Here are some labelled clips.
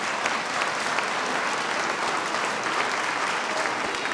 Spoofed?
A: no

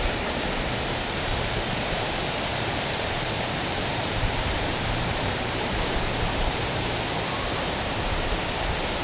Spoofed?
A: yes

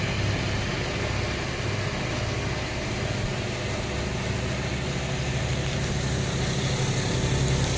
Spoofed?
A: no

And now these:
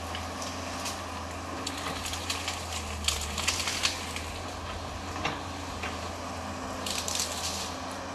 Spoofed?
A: no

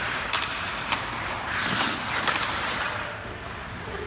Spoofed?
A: yes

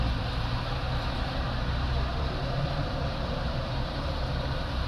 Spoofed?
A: yes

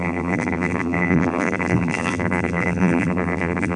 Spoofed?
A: yes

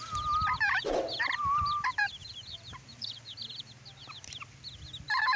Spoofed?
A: yes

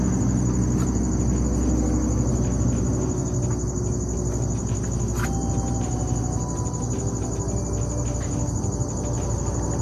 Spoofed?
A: no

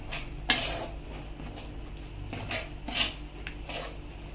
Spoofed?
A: no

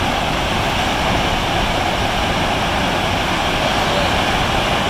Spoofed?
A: no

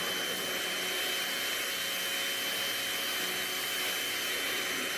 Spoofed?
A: no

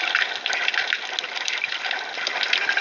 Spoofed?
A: no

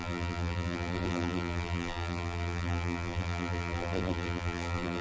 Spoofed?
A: yes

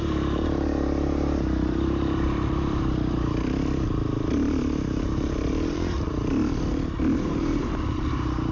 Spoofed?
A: yes